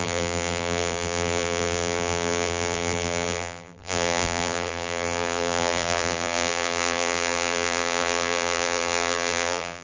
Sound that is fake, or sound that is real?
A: fake